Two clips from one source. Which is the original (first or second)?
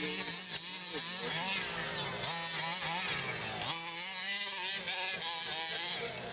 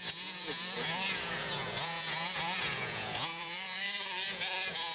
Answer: first